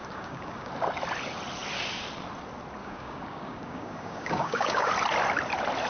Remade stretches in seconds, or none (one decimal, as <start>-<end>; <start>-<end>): 0.0-0.7; 2.8-4.9